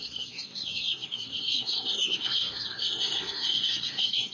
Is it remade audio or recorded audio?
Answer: remade